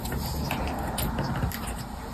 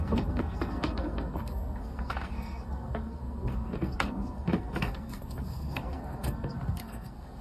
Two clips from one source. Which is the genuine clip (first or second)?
first